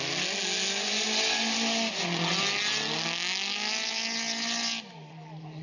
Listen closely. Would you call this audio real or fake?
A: real